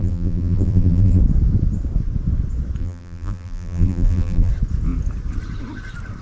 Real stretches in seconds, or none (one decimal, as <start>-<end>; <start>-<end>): 1.2-2.8; 4.5-6.2